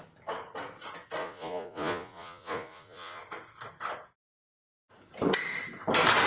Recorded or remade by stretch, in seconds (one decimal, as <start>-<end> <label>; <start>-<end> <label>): 0.0-1.2 recorded; 1.2-3.2 remade; 3.2-6.3 recorded